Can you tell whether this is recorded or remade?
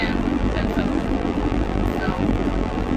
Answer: remade